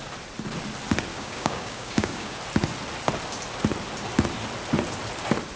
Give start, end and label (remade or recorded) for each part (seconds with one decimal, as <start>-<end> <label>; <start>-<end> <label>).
0.0-1.1 recorded; 1.1-2.4 remade; 2.4-5.6 recorded